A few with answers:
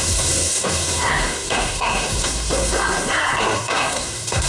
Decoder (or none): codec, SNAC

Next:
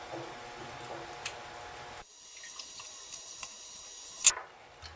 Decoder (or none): none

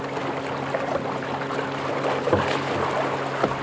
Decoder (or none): none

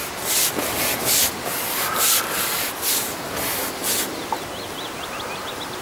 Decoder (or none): none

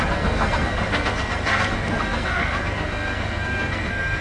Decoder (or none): codec, SNAC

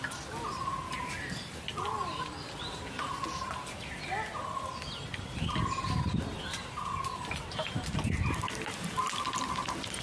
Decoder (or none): none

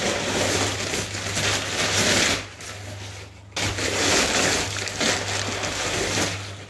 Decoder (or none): none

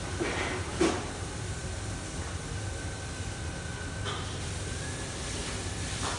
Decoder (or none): none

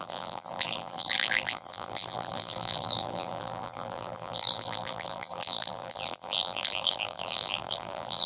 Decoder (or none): vocoder, BigVGAN v2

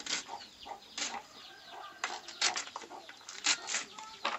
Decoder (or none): none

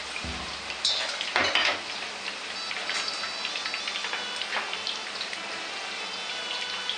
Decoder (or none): none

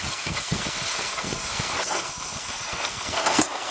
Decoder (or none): codec, SNAC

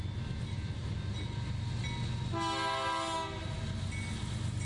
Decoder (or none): none